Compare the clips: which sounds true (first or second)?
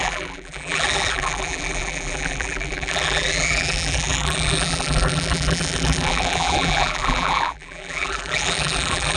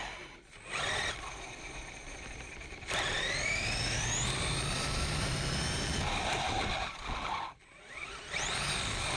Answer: second